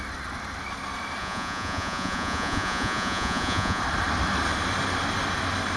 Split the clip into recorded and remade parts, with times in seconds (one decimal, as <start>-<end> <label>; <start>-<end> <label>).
0.0-1.2 recorded; 1.2-3.8 remade; 3.8-5.8 recorded